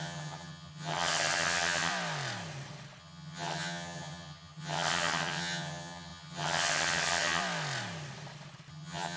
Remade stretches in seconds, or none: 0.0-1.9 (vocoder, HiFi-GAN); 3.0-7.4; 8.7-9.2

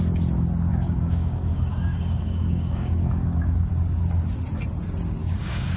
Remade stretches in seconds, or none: 0.7-3.7 (codec, DAC); 5.2-5.8

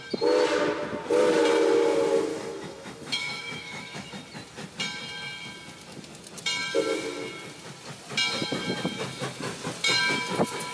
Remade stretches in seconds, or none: 2.3-4.1 (autoencoder, DAC-VAE)

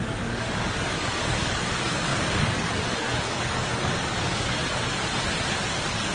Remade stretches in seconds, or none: 0.0-4.6 (codec, DAC)